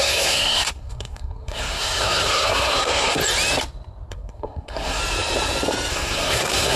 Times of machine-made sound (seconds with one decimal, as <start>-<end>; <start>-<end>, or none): 0.0-3.2; 4.1-5.0; 5.9-6.8